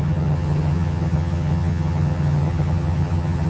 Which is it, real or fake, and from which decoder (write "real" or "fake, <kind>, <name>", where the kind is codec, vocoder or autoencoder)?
fake, vocoder, HiFi-GAN